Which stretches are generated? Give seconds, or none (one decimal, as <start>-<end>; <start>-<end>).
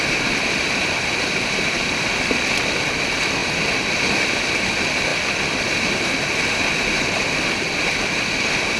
none